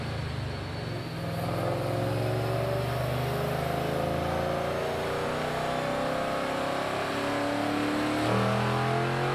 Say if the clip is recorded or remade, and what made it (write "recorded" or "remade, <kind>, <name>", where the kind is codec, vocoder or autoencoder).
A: recorded